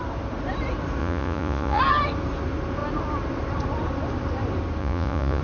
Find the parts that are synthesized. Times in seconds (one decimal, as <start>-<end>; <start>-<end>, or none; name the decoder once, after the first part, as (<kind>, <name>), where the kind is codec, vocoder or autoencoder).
1.0-1.8 (vocoder, Vocos); 4.8-5.4